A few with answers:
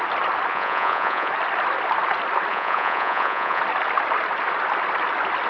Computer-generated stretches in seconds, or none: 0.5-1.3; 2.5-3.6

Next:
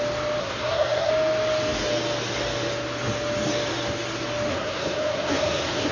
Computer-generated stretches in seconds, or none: 0.4-1.1; 4.5-5.9

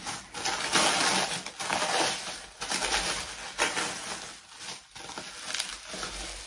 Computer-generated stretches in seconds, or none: none

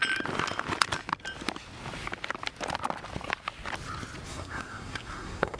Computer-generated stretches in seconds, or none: 4.3-5.6

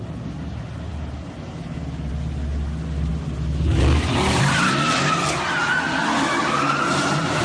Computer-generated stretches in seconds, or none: none

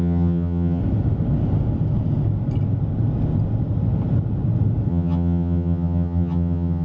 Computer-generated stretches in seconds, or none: 0.0-0.8; 4.9-6.8